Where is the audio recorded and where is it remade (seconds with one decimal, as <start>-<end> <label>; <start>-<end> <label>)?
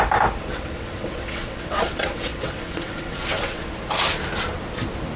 0.0-0.5 recorded; 0.5-3.6 remade; 3.6-5.2 recorded